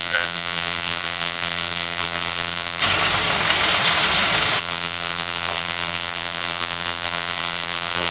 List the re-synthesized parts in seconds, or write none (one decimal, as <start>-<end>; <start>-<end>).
0.0-2.8; 4.6-8.1